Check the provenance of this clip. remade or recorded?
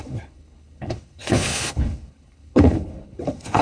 remade